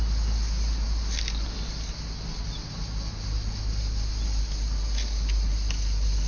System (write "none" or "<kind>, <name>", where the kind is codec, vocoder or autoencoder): none